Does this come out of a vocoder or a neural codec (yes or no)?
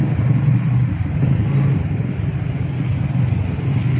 no